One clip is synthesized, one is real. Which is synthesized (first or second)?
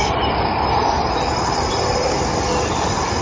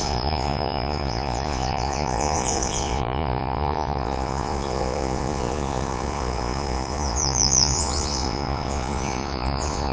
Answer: second